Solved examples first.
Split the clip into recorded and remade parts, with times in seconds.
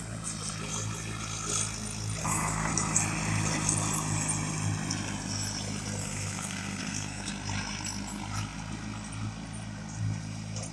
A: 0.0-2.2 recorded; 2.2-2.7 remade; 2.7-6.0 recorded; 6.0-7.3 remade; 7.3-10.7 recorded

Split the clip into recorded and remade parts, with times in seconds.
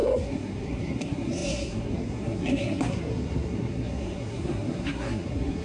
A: 0.0-5.6 remade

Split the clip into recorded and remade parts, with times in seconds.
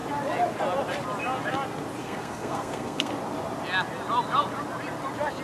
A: 0.0-2.0 recorded; 2.0-3.1 remade; 3.1-5.4 recorded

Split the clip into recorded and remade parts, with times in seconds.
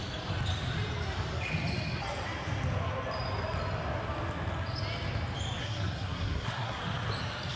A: 0.0-5.6 recorded; 5.6-6.8 remade; 6.8-7.6 recorded